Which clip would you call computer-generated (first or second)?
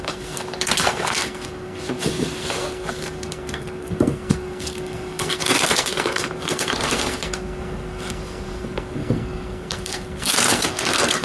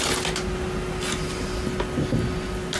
first